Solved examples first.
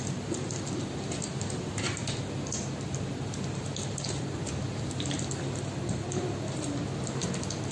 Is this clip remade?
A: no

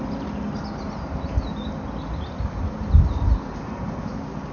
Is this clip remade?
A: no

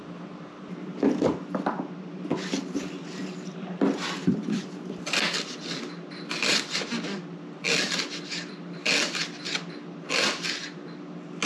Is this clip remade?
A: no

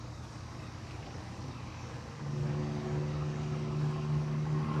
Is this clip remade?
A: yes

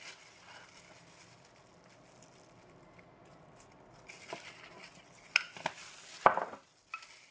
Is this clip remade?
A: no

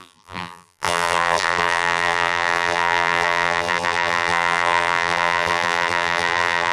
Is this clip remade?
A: yes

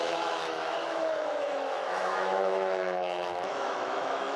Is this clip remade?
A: yes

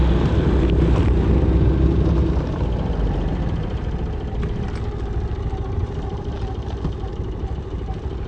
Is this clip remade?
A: no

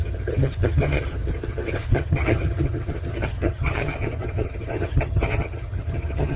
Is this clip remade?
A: yes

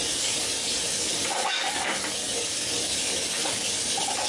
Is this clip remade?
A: yes